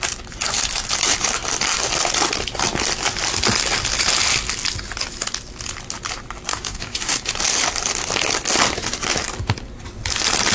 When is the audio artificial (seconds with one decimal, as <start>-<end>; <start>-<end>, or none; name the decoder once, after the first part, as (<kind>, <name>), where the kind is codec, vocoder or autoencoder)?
6.5-7.2 (codec, DAC)